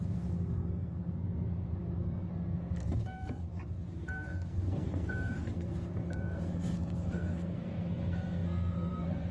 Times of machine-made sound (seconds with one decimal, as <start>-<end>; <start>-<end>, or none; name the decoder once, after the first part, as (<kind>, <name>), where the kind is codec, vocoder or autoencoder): 0.0-9.3 (codec, SNAC)